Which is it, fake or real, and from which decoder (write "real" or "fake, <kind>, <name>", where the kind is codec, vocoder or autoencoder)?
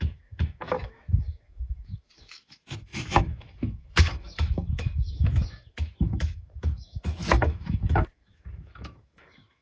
fake, autoencoder, DAC-VAE